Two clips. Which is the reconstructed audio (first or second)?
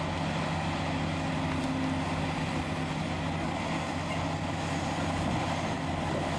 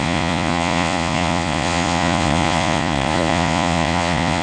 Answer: second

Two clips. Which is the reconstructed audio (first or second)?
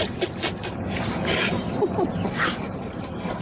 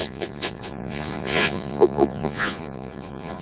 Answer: second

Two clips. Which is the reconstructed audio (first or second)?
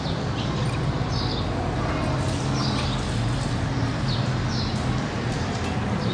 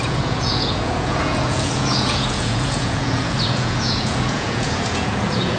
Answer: second